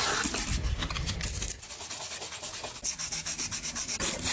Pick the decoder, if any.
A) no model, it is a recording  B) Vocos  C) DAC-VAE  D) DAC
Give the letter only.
A